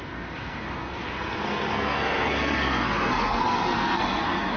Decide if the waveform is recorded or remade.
remade